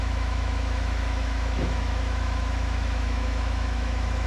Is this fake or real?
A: fake